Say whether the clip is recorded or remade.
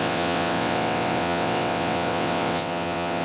remade